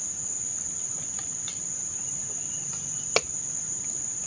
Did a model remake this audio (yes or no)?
no